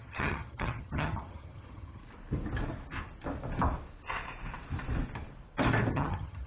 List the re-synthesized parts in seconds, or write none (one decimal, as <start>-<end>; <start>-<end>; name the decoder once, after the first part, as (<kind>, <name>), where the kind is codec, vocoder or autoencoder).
0.0-2.0 (vocoder, HiFi-GAN); 5.9-6.5